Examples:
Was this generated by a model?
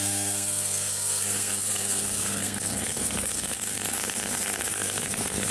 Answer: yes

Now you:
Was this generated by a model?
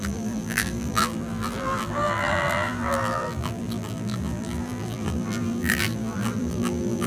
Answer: yes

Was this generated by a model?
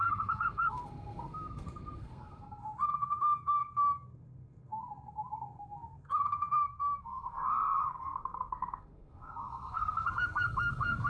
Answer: yes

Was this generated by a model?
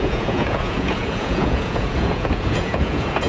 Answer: yes